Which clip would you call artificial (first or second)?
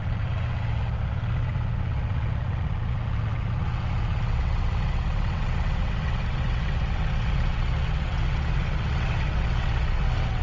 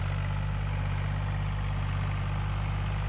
first